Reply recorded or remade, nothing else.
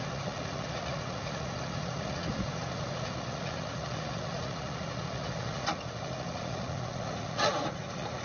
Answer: remade